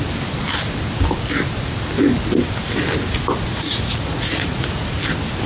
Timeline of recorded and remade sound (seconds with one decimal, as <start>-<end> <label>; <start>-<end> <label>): 0.0-3.5 recorded; 3.5-4.9 remade; 4.9-5.5 recorded